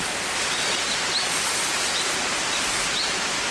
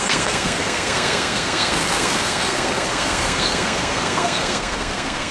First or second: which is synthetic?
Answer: second